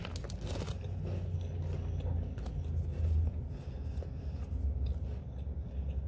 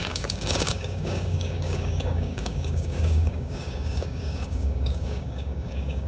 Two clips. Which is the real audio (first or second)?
first